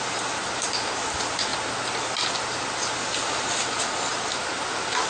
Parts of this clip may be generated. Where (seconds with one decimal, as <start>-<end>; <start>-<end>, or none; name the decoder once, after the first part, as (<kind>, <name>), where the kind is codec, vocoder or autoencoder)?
none